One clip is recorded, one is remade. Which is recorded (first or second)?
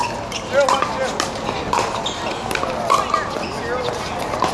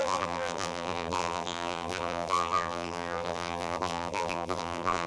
first